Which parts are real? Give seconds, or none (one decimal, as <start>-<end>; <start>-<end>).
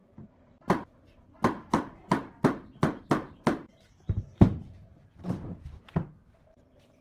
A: 0.0-3.0